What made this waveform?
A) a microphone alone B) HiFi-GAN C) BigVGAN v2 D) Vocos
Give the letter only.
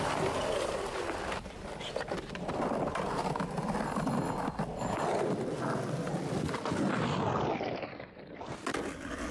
A